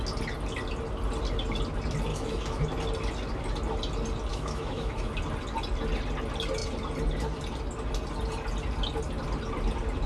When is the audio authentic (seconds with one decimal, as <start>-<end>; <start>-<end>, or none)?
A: 0.0-2.1; 2.6-4.3; 5.1-10.1

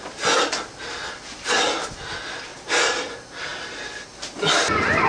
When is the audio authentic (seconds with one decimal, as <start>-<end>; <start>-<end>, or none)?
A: 0.0-5.1

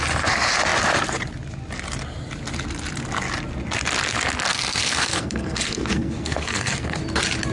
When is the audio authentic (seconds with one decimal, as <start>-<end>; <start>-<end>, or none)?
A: 0.0-4.5; 7.0-7.5

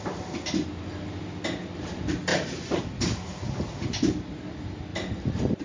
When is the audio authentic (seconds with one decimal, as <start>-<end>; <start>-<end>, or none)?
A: 0.0-2.3; 2.8-4.9

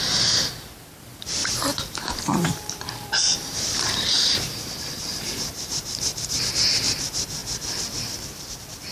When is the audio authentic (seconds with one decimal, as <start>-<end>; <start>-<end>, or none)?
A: 0.0-1.4; 6.4-8.9

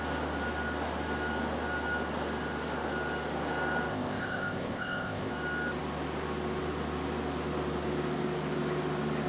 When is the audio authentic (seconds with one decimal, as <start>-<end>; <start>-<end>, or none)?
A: 0.0-3.9; 5.3-9.3

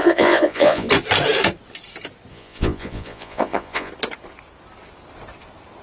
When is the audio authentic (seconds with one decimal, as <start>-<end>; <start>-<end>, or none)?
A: 0.9-2.3; 3.9-5.8

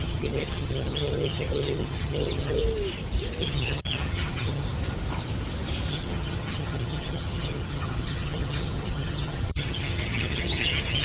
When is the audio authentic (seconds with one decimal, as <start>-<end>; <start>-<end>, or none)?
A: 2.6-3.4; 4.6-5.9